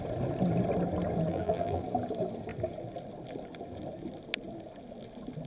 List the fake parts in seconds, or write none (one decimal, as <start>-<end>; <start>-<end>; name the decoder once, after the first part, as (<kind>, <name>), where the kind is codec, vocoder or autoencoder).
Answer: 1.3-1.8 (vocoder, BigVGAN v2)